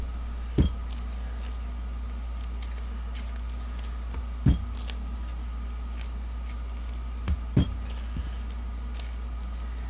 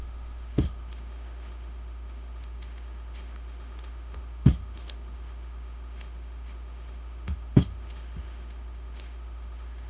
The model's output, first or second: second